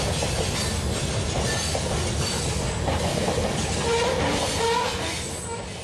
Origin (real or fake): real